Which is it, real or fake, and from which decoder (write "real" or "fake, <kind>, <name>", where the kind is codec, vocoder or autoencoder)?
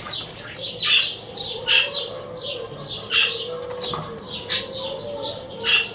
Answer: real